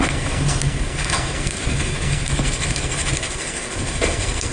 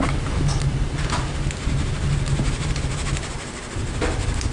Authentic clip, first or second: second